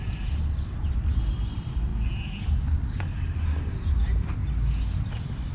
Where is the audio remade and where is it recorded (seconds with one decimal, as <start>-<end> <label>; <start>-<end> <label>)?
0.0-1.9 remade; 1.9-3.7 recorded; 3.7-4.4 remade; 4.4-5.1 recorded; 5.1-5.5 remade